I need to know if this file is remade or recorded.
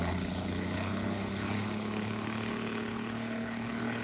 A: remade